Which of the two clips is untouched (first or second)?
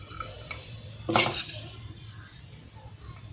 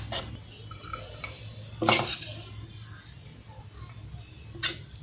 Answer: second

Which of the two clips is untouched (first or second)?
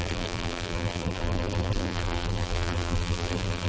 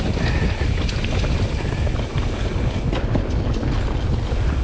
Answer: second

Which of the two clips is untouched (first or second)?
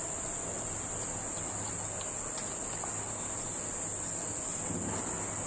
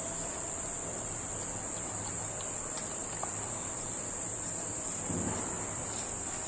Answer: first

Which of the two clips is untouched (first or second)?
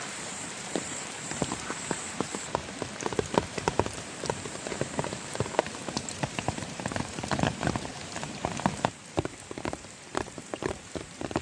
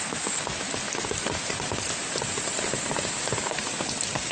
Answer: second